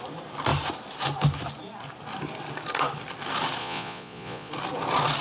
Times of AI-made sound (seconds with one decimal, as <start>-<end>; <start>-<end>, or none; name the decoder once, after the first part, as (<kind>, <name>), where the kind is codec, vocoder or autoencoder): 3.6-4.5 (vocoder, Vocos)